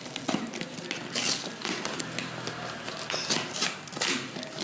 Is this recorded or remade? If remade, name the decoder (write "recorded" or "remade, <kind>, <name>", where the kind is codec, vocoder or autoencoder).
recorded